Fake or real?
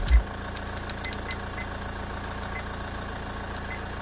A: real